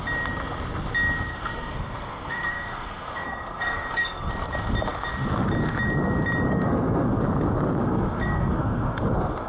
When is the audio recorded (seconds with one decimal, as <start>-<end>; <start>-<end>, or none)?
0.0-1.3; 4.3-6.5; 7.2-7.8